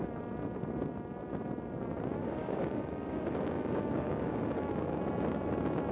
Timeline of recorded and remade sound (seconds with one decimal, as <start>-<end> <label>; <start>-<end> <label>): 0.0-2.2 recorded; 2.2-5.0 remade; 5.0-5.9 recorded